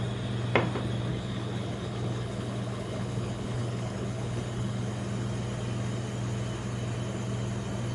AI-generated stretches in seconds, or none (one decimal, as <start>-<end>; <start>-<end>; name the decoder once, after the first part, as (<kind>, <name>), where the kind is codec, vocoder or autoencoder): 1.1-4.9 (codec, HILCodec)